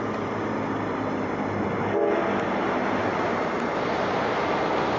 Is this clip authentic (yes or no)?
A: yes